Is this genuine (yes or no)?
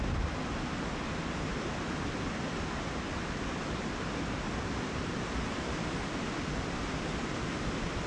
yes